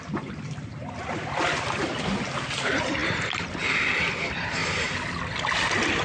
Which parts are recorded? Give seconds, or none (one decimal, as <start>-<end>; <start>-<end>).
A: 3.0-3.8; 4.6-6.0